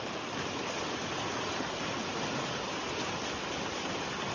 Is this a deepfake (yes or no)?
no